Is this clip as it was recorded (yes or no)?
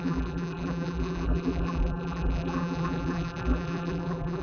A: no